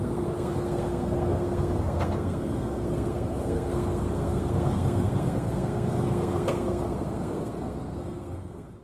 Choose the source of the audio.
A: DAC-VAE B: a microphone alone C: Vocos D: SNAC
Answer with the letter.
D